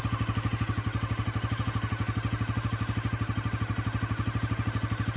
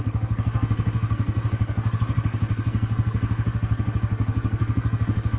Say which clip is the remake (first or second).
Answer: second